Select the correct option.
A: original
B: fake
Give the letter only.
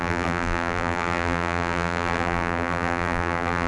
B